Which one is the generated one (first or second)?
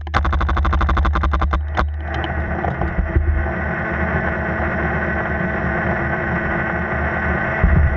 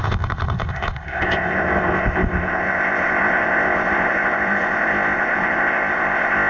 second